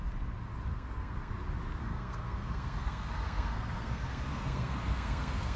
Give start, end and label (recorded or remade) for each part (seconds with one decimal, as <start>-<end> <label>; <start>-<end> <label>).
0.0-0.7 recorded; 0.7-1.3 remade; 1.3-1.8 recorded; 1.8-5.6 remade